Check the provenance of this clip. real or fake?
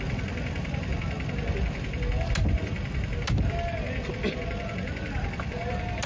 real